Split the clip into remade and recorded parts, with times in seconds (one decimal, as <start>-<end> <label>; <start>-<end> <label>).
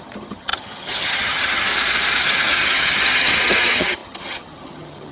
0.0-1.7 remade; 1.7-2.2 recorded; 2.2-5.1 remade